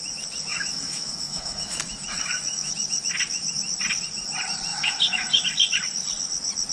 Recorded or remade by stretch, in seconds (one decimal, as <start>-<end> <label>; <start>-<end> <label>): 0.0-0.5 recorded; 0.5-2.7 remade; 2.7-4.7 recorded; 4.7-5.5 remade; 5.5-6.7 recorded